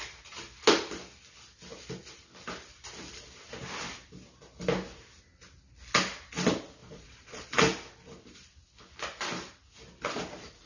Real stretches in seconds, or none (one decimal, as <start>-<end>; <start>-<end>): 0.0-6.8; 7.6-10.7